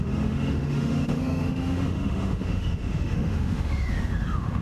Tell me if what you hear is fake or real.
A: fake